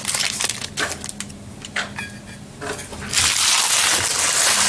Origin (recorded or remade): recorded